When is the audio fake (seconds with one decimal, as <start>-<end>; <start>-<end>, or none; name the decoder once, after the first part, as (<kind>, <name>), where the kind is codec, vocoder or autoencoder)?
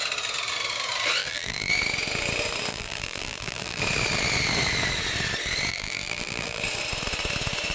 1.2-1.7 (vocoder, BigVGAN v2); 2.7-3.8; 5.7-6.6